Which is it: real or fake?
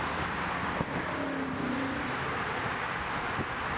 real